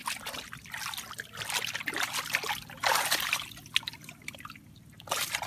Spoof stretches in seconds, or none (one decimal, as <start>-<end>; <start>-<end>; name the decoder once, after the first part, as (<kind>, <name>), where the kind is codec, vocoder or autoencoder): none